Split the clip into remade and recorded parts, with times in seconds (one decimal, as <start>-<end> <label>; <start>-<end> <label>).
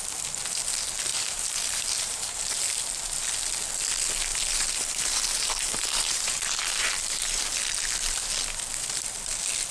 0.0-1.1 recorded; 1.1-2.6 remade; 2.6-4.3 recorded; 4.3-7.5 remade; 7.5-9.7 recorded